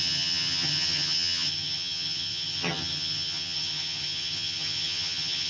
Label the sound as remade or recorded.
remade